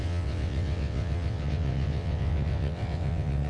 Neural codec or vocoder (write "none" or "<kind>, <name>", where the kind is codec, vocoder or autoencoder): vocoder, WaveNeXt